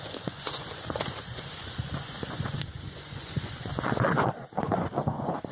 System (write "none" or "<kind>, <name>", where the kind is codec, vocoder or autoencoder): vocoder, Vocos